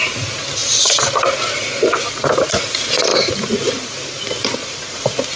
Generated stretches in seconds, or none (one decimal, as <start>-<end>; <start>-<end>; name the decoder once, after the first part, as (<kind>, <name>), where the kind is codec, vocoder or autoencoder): none